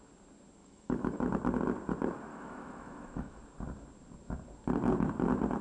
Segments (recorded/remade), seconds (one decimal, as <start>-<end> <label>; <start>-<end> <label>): 0.0-0.6 recorded; 0.6-1.2 remade; 1.2-2.3 recorded; 2.3-3.4 remade; 3.4-5.6 recorded